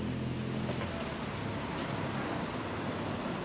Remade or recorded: recorded